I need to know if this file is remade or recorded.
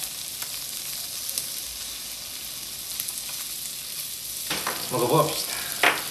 recorded